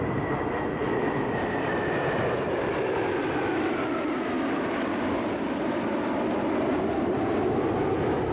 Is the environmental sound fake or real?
real